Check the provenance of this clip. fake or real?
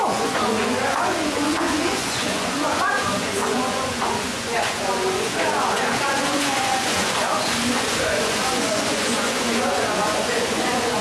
fake